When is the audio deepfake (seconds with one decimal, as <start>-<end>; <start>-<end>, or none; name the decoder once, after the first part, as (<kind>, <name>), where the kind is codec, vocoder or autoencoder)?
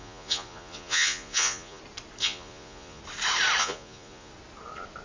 0.0-1.8 (vocoder, Vocos); 2.2-3.0; 3.6-4.3